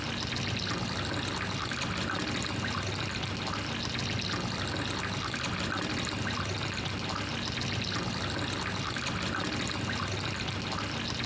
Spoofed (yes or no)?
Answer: no